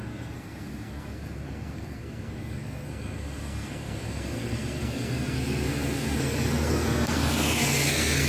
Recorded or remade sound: remade